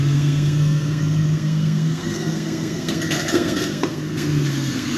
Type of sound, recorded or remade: remade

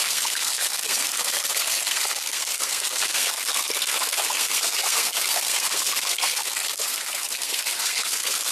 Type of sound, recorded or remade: remade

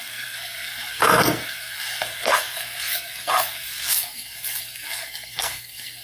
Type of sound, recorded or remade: remade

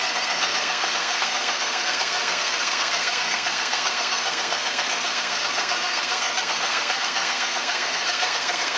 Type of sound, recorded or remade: remade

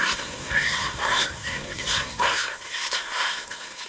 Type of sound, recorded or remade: remade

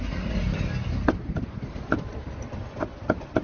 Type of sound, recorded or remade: recorded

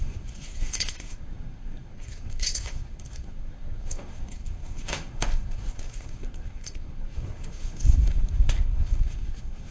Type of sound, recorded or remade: remade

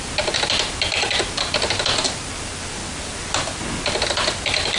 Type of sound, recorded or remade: recorded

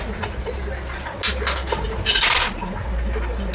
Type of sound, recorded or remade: recorded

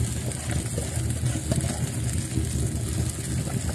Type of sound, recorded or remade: recorded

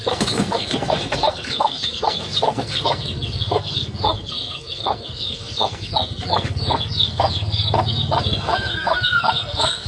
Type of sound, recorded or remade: remade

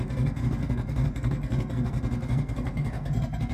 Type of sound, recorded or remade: remade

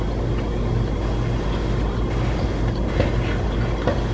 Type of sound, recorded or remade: recorded